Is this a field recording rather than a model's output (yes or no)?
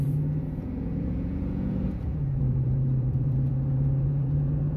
no